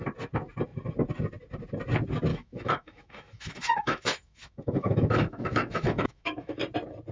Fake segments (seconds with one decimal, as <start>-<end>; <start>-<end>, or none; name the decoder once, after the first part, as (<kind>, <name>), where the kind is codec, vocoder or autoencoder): 2.3-6.6 (autoencoder, DAC-VAE)